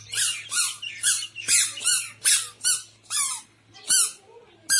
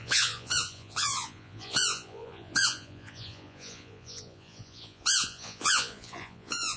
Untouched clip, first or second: first